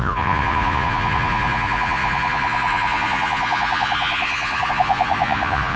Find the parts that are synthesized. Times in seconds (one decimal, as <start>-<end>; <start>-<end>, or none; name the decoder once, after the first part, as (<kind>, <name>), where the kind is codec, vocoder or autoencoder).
0.0-5.8 (vocoder, Vocos)